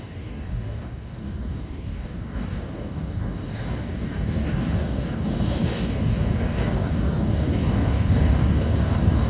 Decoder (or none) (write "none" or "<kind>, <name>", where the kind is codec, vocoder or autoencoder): codec, DAC